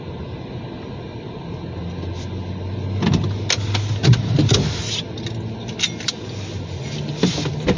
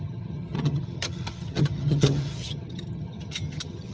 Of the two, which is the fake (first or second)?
second